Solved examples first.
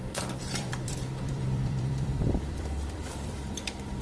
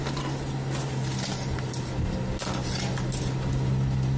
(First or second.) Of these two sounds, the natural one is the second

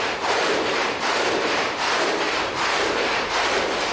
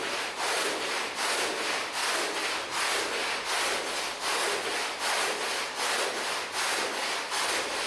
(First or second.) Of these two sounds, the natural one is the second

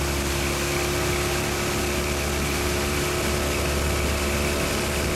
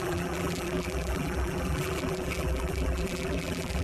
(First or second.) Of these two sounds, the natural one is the first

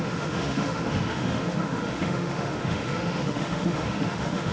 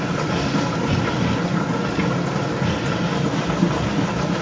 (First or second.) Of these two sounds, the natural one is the second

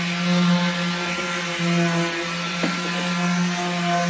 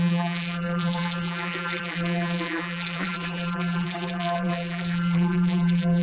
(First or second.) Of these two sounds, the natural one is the first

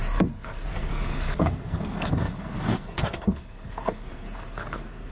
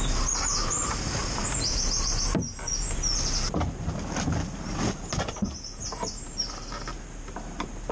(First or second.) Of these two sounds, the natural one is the second